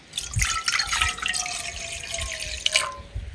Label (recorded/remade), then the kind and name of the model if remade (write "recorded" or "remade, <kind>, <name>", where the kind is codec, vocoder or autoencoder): recorded